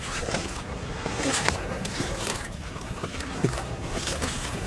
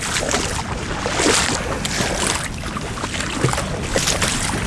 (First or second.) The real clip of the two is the second